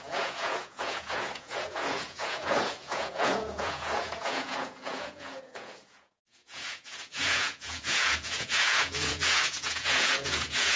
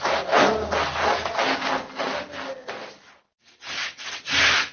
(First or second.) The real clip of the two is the second